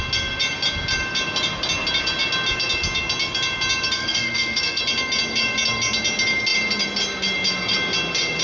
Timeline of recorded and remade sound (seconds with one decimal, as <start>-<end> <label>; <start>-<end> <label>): 0.0-4.0 recorded; 4.0-4.8 remade; 4.8-8.4 recorded